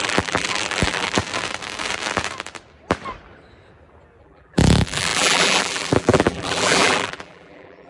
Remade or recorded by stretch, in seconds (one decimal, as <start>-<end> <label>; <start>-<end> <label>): 0.0-1.2 remade; 1.2-4.2 recorded; 4.2-7.9 remade